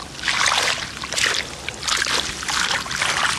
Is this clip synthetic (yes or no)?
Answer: no